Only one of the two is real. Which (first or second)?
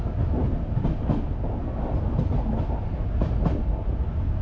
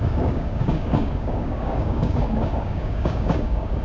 first